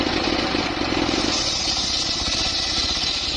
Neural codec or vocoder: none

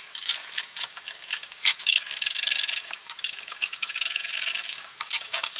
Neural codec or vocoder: codec, DAC